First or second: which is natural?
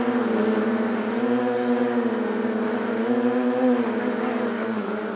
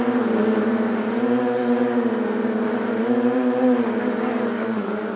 first